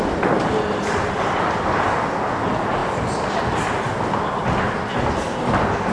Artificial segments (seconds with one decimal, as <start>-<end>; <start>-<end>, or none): none